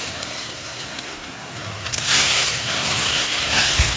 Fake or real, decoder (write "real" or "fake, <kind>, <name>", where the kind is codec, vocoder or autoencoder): fake, codec, SNAC